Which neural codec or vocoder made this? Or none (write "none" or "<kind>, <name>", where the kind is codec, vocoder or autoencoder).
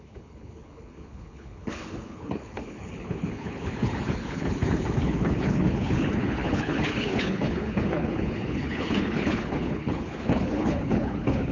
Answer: codec, HILCodec